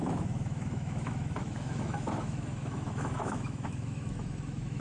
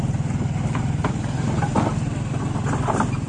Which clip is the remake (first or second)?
first